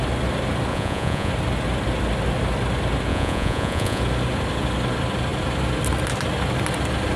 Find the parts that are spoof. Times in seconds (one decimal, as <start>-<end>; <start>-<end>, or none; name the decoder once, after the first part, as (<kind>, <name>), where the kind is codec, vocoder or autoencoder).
0.7-1.3 (vocoder, Vocos); 3.1-4.0